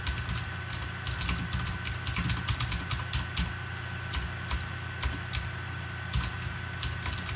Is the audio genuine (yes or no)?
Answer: yes